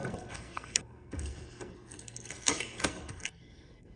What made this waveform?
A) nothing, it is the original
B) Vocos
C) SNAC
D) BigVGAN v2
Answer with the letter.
C